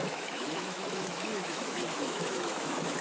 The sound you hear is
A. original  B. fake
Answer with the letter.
B